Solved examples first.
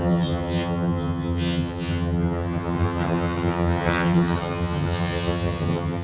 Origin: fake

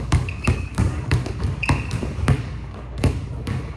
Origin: fake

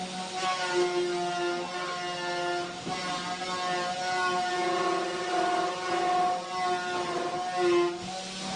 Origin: real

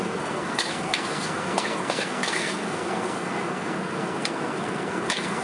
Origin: fake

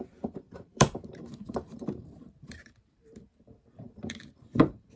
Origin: fake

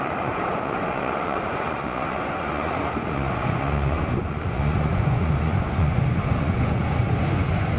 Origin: fake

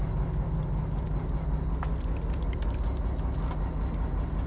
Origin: real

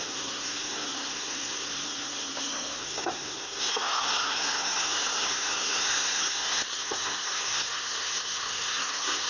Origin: fake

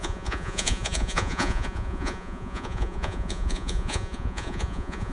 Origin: fake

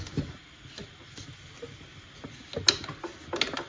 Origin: real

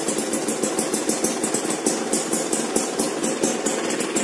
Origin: real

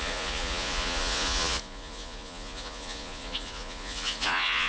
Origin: fake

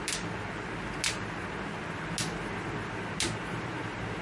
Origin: real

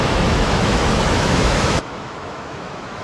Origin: fake